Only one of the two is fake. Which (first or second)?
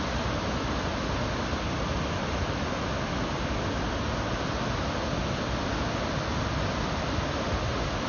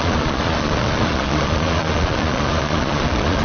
second